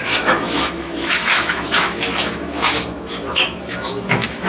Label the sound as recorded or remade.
remade